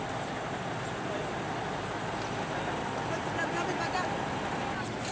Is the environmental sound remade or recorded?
recorded